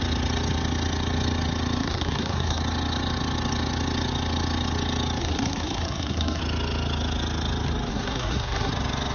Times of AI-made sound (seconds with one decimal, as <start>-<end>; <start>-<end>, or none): 1.8-2.6; 5.2-6.4; 7.9-8.7